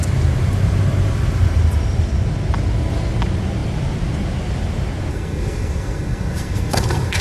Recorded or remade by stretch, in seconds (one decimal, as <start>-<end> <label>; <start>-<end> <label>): 0.0-5.1 recorded; 5.1-7.2 remade